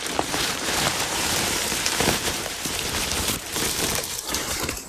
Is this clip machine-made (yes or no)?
yes